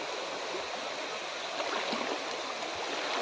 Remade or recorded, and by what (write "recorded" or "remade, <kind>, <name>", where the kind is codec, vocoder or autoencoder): recorded